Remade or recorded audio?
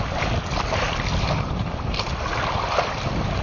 recorded